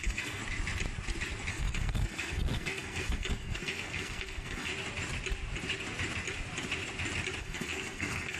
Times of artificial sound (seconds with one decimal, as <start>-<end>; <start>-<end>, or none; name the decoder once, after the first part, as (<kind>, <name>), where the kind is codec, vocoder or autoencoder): 0.0-0.4 (codec, SNAC); 1.5-4.7; 7.4-8.4